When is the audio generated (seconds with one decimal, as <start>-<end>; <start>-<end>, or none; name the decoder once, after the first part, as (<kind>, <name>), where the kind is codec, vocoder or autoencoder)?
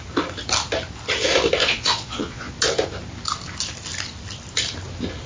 1.6-2.5 (vocoder, Vocos)